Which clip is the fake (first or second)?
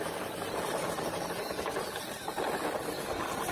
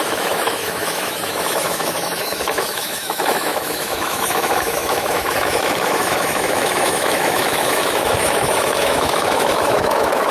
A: second